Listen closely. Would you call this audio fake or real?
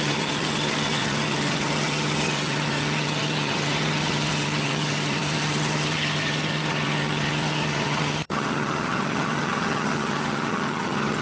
fake